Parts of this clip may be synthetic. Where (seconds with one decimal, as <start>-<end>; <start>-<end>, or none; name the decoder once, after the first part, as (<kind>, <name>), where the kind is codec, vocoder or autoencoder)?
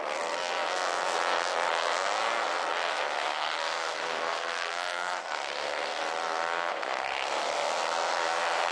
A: 2.9-6.0 (codec, SNAC); 6.7-7.4